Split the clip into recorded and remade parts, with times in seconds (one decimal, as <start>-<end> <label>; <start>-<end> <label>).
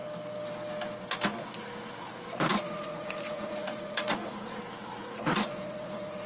0.0-2.5 recorded; 2.5-4.6 remade; 4.6-5.0 recorded; 5.0-6.3 remade